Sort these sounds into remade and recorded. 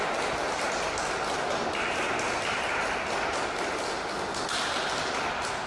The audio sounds recorded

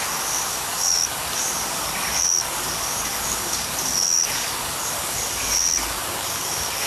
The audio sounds remade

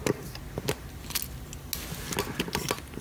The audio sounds recorded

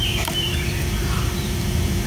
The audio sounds remade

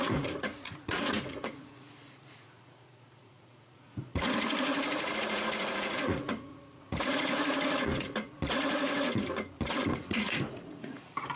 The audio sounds remade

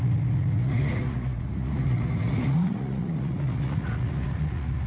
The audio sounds remade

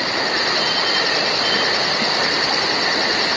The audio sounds recorded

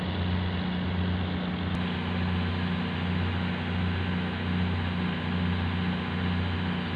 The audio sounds recorded